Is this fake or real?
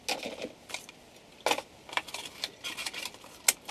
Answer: real